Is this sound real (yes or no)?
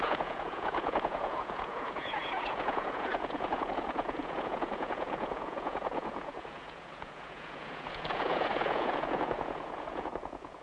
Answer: no